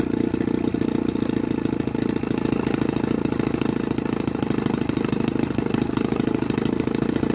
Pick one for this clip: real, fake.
real